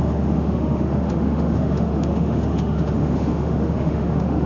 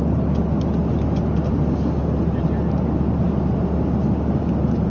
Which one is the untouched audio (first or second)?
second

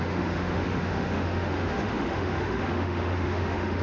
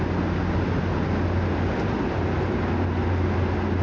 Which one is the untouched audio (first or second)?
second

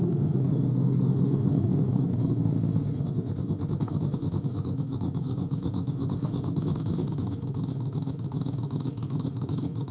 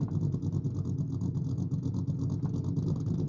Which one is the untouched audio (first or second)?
second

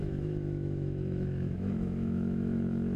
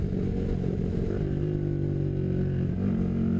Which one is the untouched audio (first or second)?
second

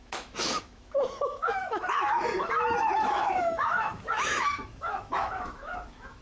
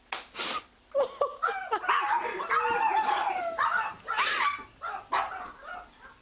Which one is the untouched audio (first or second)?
second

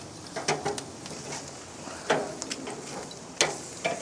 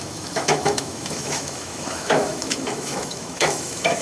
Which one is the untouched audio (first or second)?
first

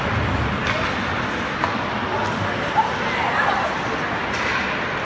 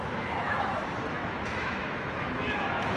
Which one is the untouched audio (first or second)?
first